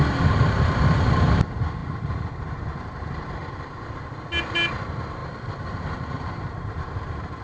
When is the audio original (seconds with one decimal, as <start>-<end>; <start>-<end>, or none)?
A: 3.4-4.7